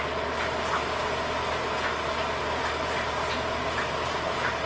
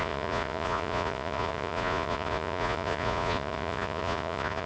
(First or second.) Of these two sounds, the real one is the first